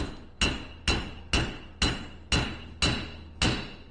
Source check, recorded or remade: recorded